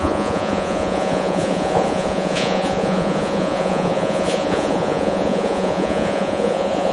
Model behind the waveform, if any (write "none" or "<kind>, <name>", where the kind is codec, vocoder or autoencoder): vocoder, Vocos